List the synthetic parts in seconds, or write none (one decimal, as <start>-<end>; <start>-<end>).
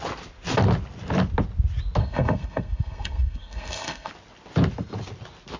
2.0-4.1